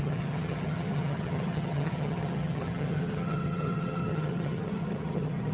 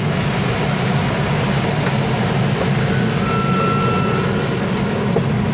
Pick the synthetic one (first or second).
first